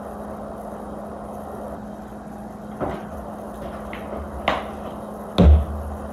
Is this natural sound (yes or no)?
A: yes